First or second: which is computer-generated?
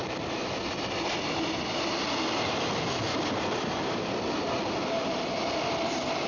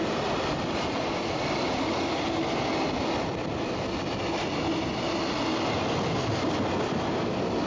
first